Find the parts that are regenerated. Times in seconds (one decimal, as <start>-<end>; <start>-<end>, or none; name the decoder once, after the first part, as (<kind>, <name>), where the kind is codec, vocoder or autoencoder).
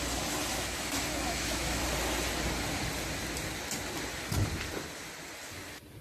0.5-1.8 (autoencoder, DAC-VAE)